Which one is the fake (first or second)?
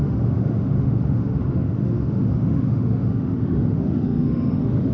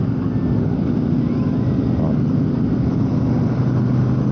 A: first